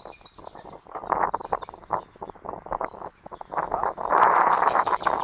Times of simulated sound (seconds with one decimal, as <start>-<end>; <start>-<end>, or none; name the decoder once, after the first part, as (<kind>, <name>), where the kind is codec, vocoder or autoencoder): 1.8-5.2 (autoencoder, DAC-VAE)